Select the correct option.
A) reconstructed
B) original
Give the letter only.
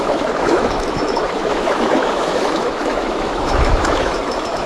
A